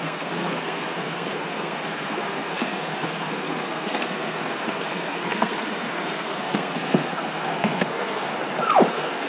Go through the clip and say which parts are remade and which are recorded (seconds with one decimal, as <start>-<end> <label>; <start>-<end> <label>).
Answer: 0.0-8.3 remade; 8.3-8.9 recorded; 8.9-9.3 remade